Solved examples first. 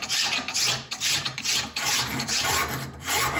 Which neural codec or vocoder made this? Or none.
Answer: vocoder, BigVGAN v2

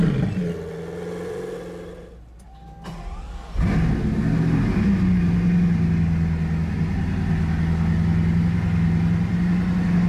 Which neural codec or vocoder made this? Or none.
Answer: none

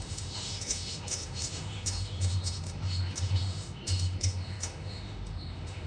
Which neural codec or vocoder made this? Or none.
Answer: autoencoder, DAC-VAE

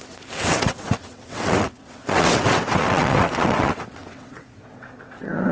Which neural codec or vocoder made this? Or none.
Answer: vocoder, WaveNeXt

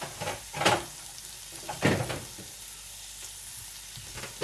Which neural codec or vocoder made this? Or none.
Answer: none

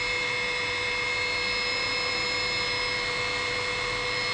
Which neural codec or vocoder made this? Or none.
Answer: none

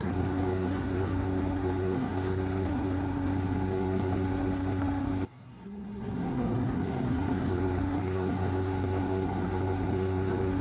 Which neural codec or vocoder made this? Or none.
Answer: codec, SNAC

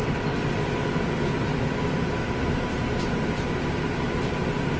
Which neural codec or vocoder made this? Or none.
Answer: none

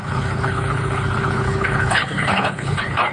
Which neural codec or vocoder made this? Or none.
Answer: codec, HILCodec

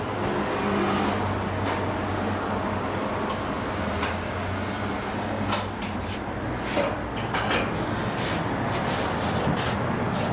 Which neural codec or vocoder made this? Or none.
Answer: none